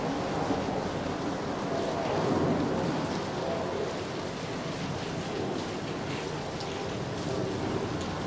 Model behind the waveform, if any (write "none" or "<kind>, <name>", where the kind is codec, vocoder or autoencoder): none